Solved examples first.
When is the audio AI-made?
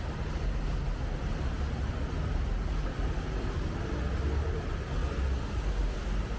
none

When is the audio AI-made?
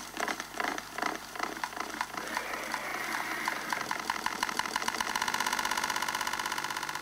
0.7-2.3 (vocoder, BigVGAN v2); 2.9-5.1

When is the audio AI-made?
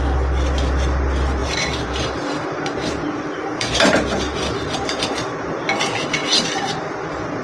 1.4-5.0 (vocoder, BigVGAN v2)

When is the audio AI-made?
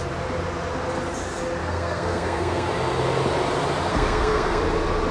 1.6-2.7 (codec, SNAC); 3.9-4.6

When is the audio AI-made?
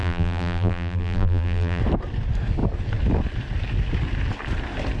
0.0-1.8 (vocoder, BigVGAN v2)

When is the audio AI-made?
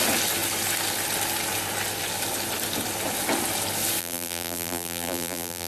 4.0-5.7 (vocoder, BigVGAN v2)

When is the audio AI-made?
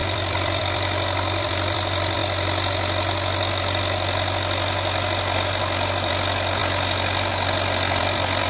0.0-2.2 (vocoder, BigVGAN v2); 6.1-8.5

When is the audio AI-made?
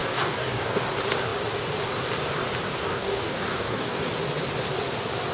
0.0-0.9 (codec, DAC); 2.9-4.0